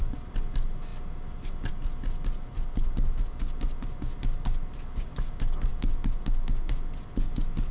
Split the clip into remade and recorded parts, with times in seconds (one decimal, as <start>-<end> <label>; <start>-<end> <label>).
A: 0.0-7.7 recorded